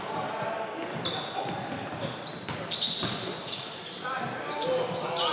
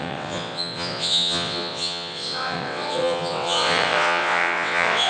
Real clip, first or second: first